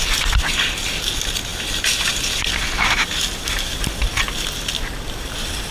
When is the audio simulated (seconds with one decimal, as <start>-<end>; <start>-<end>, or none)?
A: none